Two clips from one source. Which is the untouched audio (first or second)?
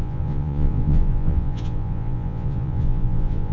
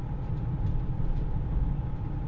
second